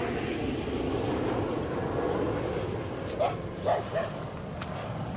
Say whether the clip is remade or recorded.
recorded